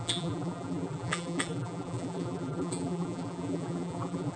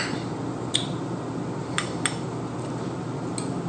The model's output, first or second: first